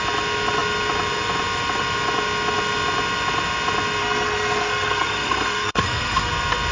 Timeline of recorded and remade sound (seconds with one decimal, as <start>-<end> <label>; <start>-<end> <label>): 0.0-4.0 recorded; 4.0-6.3 remade; 6.3-6.7 recorded